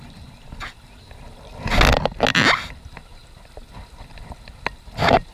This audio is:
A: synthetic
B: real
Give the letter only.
B